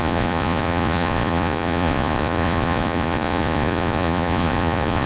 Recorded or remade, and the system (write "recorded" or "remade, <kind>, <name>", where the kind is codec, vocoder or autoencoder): remade, vocoder, Vocos